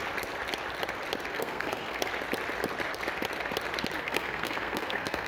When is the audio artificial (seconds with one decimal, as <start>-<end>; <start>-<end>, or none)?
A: 1.3-2.1; 4.0-5.3